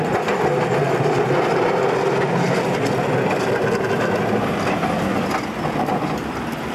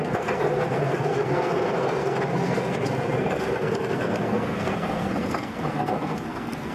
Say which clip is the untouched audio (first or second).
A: first